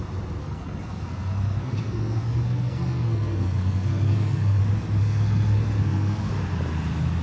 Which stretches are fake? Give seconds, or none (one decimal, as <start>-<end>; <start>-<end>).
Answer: 0.4-4.6; 5.0-6.3

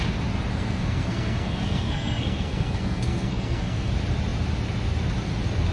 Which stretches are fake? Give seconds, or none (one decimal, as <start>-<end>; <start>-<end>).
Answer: 0.5-3.9